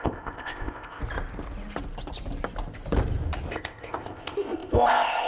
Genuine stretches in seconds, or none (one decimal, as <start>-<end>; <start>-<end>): 1.0-3.5